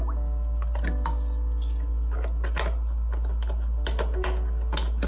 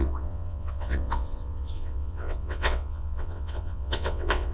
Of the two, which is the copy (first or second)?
second